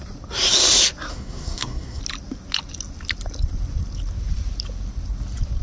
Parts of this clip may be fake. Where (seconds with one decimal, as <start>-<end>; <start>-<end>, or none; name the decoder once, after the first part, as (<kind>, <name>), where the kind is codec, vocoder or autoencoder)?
1.1-2.0 (codec, SNAC)